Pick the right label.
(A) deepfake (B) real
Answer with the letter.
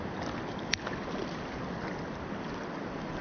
B